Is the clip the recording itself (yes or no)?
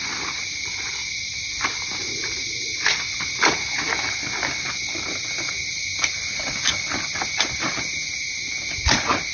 yes